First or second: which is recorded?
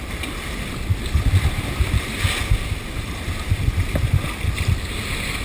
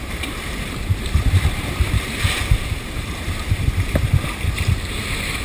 first